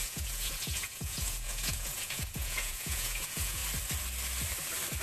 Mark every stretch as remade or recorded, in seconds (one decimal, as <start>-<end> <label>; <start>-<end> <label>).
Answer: 0.0-3.6 remade; 3.6-5.0 recorded